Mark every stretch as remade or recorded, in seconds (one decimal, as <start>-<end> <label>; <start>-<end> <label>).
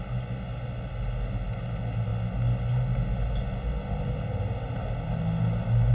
0.0-5.9 recorded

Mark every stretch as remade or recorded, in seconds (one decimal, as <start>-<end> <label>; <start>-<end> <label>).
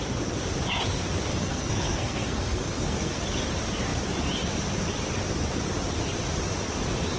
0.0-1.3 recorded; 1.3-3.2 remade; 3.2-7.2 recorded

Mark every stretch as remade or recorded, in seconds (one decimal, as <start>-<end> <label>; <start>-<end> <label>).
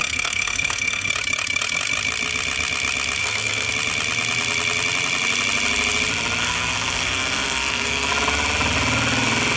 0.0-1.1 remade; 1.1-3.2 recorded; 3.2-3.7 remade; 3.7-6.4 recorded; 6.4-8.1 remade; 8.1-9.6 recorded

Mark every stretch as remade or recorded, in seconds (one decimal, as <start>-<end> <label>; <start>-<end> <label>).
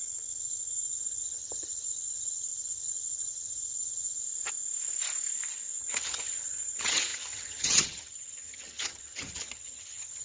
0.0-4.2 remade; 4.2-5.8 recorded; 5.8-10.2 remade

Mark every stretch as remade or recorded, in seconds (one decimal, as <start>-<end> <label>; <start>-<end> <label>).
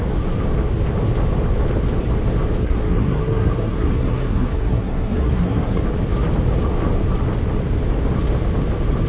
0.0-2.6 recorded; 2.6-5.8 remade; 5.8-9.1 recorded